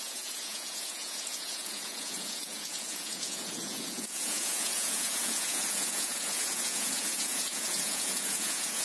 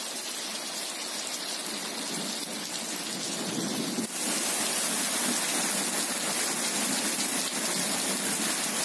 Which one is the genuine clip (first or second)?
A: second